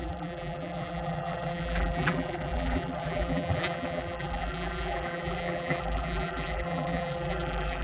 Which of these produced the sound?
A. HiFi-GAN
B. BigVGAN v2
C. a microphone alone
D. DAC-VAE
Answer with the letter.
B